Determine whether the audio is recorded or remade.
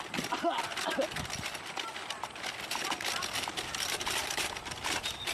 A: remade